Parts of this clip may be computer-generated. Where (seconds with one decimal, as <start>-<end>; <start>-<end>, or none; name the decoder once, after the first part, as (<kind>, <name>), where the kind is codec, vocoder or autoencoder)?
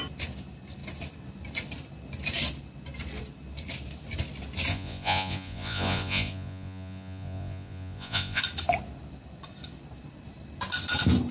4.7-8.4 (vocoder, Vocos)